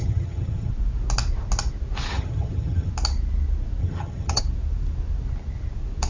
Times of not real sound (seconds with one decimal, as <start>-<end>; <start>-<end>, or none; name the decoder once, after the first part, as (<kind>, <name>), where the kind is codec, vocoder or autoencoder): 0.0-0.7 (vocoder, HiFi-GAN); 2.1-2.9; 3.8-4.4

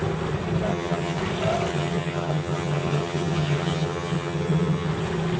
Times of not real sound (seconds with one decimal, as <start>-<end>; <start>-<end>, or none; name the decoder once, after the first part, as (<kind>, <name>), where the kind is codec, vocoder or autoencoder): 0.7-1.2 (vocoder, HiFi-GAN); 1.7-4.9

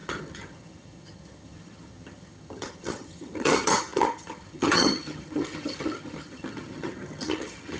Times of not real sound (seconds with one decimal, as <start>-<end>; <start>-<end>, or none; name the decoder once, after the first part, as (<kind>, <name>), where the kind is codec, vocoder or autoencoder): 0.0-7.8 (vocoder, HiFi-GAN)

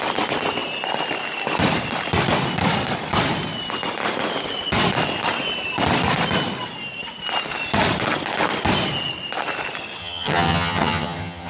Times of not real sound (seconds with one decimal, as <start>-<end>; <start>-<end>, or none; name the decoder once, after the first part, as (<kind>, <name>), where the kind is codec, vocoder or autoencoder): 10.0-11.5 (vocoder, HiFi-GAN)

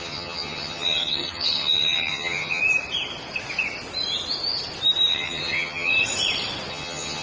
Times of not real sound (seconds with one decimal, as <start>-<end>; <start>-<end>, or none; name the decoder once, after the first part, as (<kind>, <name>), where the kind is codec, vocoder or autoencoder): 0.0-2.6 (vocoder, HiFi-GAN); 5.1-5.9; 6.7-7.2

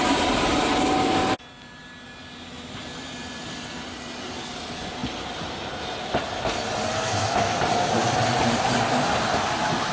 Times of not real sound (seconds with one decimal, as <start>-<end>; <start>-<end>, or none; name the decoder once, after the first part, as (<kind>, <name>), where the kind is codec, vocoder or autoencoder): none

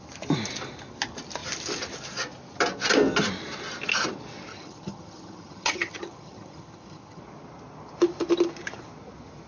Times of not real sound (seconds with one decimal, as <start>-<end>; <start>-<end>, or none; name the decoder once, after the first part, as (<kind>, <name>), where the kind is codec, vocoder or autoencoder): 4.5-7.2 (vocoder, HiFi-GAN)